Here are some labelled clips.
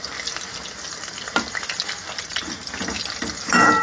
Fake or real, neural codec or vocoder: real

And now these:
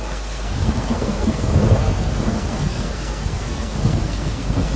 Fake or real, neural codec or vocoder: fake, codec, SNAC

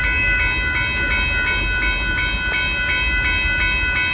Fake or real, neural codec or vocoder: real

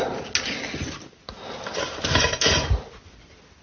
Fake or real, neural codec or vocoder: real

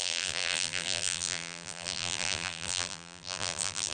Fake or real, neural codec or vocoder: fake, vocoder, BigVGAN v2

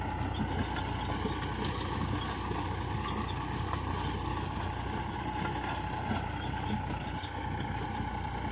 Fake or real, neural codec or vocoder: real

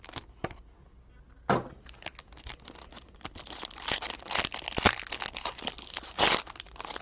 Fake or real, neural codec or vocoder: real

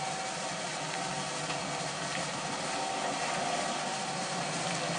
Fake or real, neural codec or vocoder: real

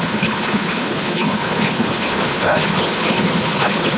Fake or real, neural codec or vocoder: fake, codec, HILCodec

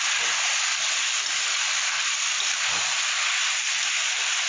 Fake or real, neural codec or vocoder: real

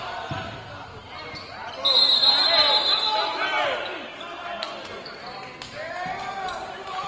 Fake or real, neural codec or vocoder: real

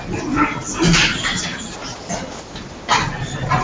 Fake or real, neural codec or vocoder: real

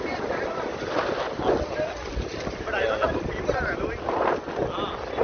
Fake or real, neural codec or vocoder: real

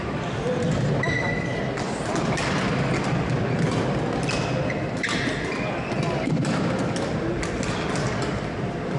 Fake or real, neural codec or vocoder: real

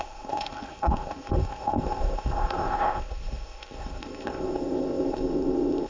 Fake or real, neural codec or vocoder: fake, codec, ZipCodec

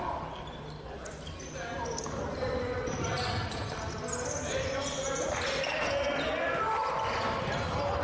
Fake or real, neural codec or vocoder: real